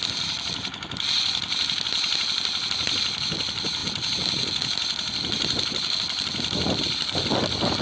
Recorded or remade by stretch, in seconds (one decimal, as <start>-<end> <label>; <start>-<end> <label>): 0.0-7.8 recorded